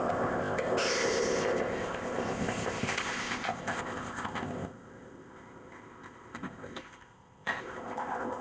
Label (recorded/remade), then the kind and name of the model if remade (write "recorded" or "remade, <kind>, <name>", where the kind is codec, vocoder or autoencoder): remade, codec, ZipCodec